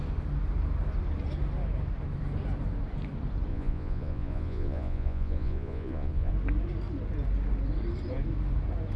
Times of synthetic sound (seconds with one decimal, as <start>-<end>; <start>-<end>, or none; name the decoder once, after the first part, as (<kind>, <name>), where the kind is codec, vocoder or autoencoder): 3.5-6.3 (vocoder, Vocos)